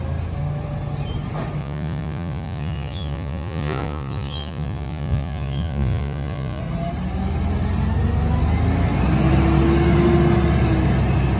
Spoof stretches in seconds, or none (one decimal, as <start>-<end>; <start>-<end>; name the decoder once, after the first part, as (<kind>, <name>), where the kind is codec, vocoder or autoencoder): 1.6-6.6 (vocoder, Vocos)